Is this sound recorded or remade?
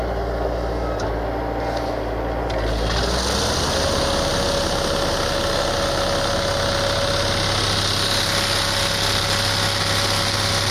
recorded